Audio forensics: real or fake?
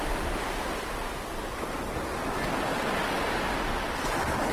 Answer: real